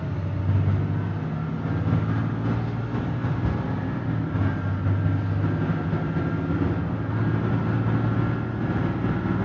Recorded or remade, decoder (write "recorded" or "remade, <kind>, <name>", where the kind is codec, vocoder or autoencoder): recorded